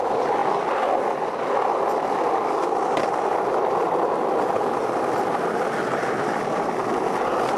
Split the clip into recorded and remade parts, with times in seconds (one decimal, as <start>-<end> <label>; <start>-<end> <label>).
0.0-7.6 recorded